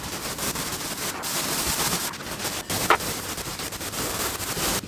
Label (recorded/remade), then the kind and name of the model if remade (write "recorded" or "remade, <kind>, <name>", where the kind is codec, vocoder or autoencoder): remade, vocoder, BigVGAN v2